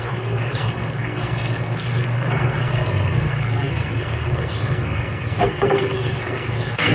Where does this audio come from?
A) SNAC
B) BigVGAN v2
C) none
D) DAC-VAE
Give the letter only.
A